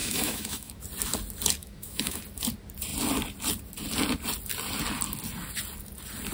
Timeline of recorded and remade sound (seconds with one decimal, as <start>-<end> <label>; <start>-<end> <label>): 0.0-0.8 remade; 0.8-1.6 recorded; 1.6-2.2 remade; 2.2-6.3 recorded